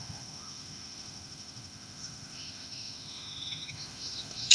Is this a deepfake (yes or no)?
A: yes